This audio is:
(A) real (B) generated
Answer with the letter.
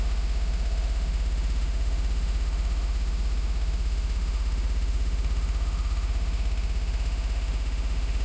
B